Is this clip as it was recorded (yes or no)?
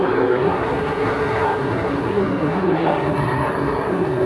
no